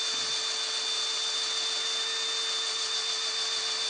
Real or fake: real